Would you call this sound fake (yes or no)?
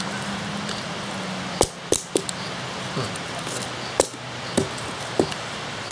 no